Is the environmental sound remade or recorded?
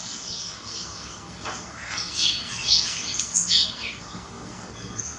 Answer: remade